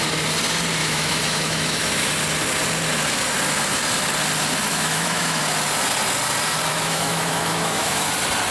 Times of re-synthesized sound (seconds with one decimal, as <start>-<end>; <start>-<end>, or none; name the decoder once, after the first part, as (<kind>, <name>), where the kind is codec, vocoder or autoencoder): 0.8-2.1 (autoencoder, DAC-VAE); 4.7-5.4; 6.7-8.1